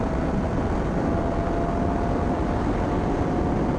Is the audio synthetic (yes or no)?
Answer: no